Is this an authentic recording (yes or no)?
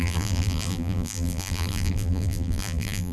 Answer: no